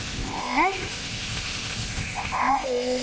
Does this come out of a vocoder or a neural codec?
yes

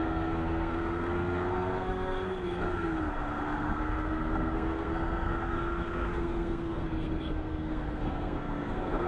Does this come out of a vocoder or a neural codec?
yes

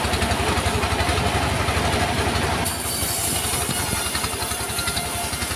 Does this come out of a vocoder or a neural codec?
no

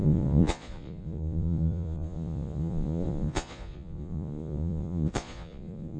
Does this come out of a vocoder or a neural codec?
yes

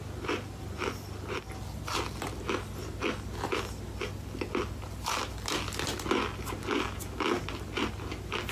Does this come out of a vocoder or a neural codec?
no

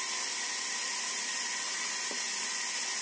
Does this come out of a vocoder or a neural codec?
no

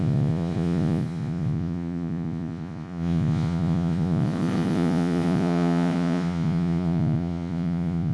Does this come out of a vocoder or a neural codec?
yes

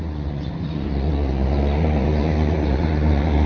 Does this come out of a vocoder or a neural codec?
yes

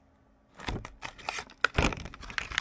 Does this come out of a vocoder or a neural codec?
no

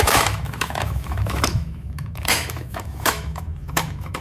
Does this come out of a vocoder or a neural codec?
yes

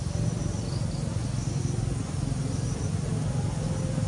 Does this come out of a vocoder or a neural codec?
no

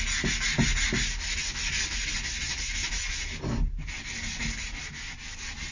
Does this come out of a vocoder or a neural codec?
no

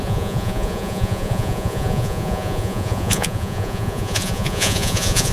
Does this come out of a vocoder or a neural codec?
yes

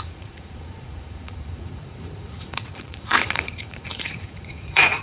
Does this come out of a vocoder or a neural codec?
yes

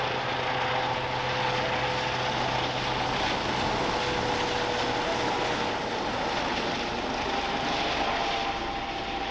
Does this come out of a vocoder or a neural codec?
no